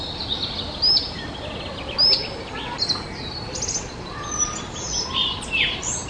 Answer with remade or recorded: recorded